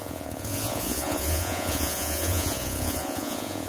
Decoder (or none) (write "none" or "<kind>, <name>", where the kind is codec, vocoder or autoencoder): vocoder, Vocos